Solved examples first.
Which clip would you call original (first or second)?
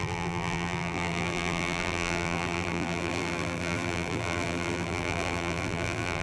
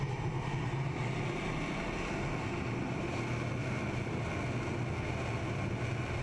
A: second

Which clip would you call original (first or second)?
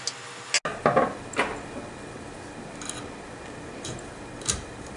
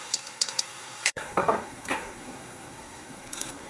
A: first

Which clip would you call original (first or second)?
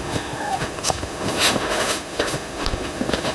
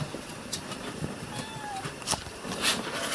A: second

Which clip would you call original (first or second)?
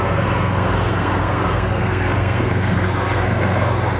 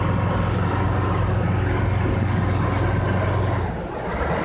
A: second